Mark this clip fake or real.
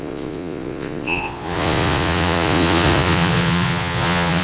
fake